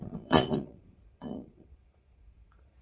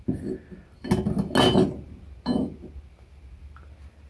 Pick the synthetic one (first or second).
first